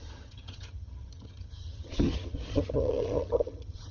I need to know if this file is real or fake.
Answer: fake